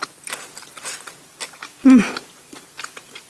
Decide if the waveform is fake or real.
real